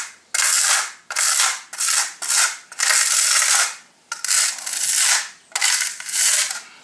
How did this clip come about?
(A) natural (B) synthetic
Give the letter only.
A